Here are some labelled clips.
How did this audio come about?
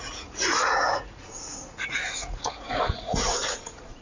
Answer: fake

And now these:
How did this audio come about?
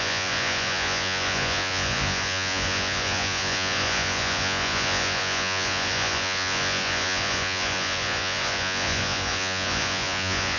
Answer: fake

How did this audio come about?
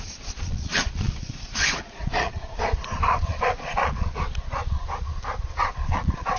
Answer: fake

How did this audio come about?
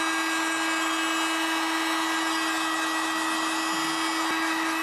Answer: real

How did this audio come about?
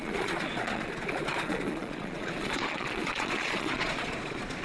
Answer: fake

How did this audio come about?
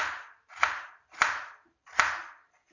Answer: real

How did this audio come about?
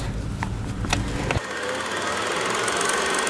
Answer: real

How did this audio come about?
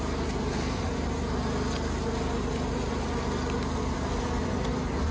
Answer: real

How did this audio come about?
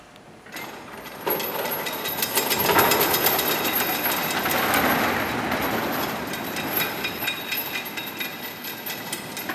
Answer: real